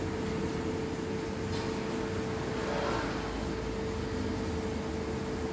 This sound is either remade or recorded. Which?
recorded